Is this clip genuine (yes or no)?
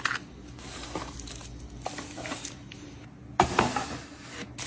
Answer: yes